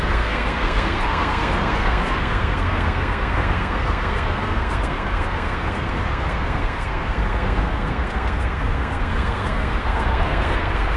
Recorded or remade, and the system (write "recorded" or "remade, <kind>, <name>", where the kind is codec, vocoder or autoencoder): remade, codec, SNAC